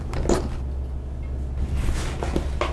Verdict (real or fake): real